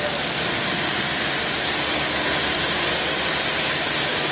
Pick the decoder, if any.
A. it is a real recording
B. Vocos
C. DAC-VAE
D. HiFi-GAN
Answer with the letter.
A